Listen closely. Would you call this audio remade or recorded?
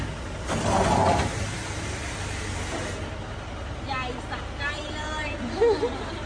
recorded